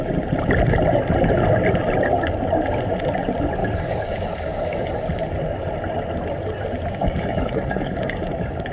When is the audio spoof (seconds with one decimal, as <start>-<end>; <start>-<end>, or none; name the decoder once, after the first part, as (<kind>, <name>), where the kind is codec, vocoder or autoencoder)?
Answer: 3.6-4.9 (codec, DAC); 7.0-8.7